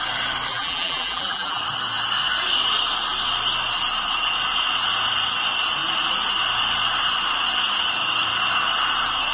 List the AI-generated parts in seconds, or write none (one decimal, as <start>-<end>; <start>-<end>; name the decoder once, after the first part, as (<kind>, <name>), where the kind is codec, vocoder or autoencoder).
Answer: 0.5-1.6 (vocoder, BigVGAN v2)